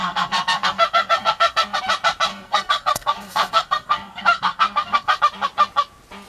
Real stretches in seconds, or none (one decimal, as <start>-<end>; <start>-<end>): 1.8-2.3; 5.2-6.3